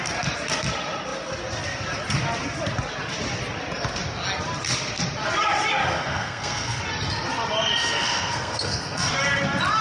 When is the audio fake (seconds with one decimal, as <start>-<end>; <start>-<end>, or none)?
5.8-6.8; 7.8-9.1